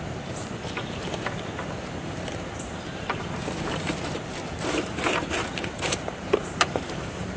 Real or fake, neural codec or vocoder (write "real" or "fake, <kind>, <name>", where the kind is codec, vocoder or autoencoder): fake, vocoder, BigVGAN v2